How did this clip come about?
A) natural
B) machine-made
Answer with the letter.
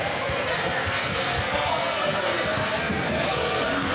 B